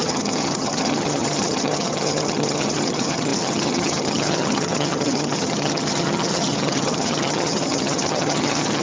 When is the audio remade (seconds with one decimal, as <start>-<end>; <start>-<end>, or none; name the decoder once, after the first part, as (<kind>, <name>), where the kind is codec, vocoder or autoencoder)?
0.0-8.8 (vocoder, HiFi-GAN)